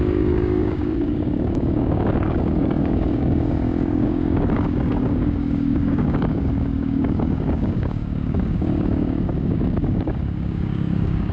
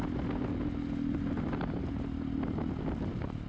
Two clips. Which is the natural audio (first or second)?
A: second